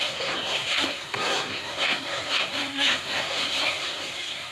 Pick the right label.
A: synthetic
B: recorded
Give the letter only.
A